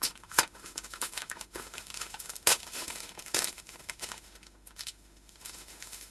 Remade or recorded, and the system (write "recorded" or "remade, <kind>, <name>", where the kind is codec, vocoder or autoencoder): remade, autoencoder, DAC-VAE